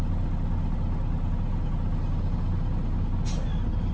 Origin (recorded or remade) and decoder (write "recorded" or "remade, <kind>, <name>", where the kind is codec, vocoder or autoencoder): recorded